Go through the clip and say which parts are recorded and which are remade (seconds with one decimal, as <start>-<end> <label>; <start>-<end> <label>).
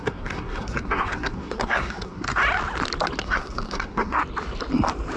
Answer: 0.0-2.4 remade; 2.4-3.2 recorded; 3.2-4.2 remade; 4.2-5.2 recorded